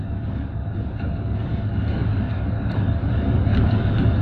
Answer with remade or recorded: remade